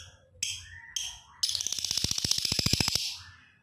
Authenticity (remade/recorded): recorded